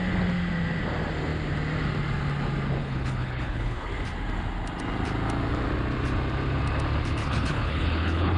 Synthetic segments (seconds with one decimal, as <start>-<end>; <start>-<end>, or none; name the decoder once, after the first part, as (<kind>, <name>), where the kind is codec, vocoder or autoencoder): 2.8-3.9 (codec, HILCodec); 7.2-8.4